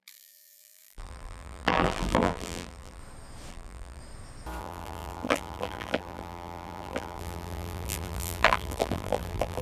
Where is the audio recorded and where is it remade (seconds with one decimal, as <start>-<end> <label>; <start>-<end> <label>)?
0.0-3.0 remade; 3.0-3.5 recorded; 3.5-4.0 remade; 4.0-4.6 recorded; 4.6-9.6 remade